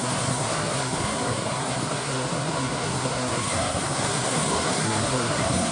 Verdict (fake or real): fake